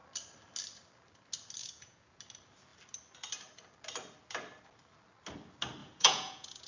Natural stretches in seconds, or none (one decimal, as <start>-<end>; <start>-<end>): 0.0-1.6; 2.2-5.8